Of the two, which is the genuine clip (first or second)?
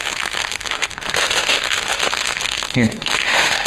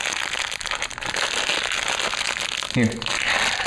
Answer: second